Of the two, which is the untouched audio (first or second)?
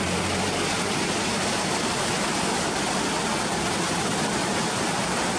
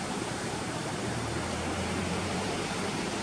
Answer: first